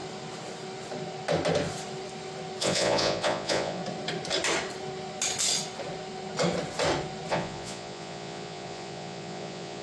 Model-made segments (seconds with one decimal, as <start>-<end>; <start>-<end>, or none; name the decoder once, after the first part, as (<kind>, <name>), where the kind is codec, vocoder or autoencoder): 2.6-3.8 (vocoder, Vocos); 7.3-9.8